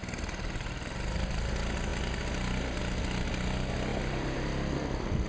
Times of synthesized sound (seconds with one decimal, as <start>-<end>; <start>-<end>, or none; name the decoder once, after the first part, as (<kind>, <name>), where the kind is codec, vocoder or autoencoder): 3.9-5.3 (vocoder, BigVGAN v2)